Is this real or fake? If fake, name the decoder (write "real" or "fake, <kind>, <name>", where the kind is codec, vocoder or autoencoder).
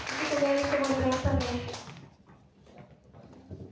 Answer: real